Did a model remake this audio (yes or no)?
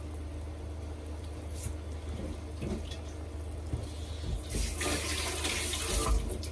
no